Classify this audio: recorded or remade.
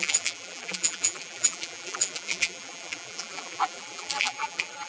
remade